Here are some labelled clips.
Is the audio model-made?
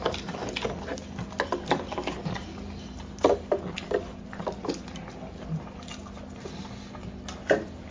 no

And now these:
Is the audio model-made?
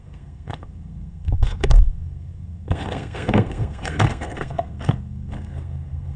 yes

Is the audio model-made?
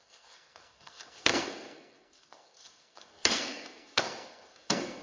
yes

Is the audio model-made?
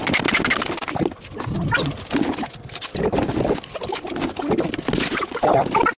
no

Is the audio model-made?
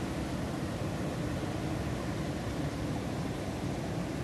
no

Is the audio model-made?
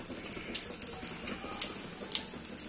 no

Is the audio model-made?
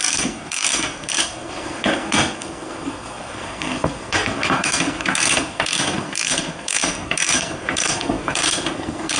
yes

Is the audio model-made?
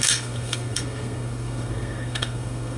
yes